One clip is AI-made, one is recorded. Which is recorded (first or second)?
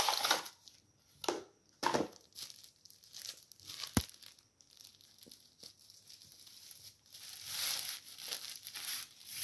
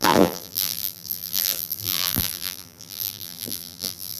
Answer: first